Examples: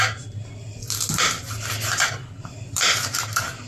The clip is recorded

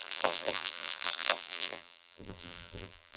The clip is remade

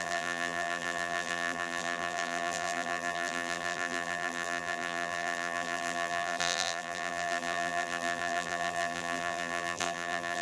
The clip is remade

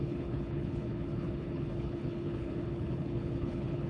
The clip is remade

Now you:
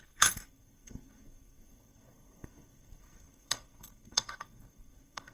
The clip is remade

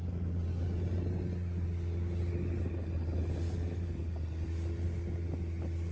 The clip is recorded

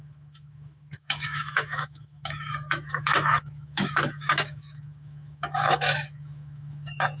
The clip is remade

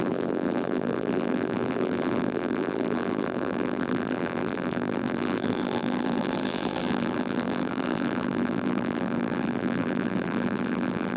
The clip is remade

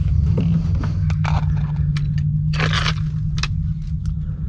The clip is recorded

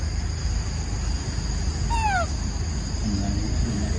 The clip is recorded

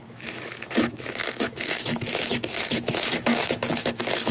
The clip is remade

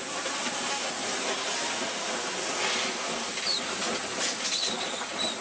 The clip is recorded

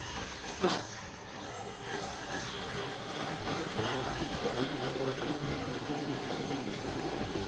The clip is remade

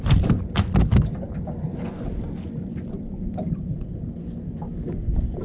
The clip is recorded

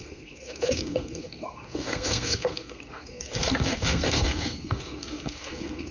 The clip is remade